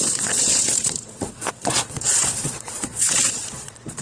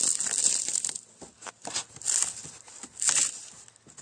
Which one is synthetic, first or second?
first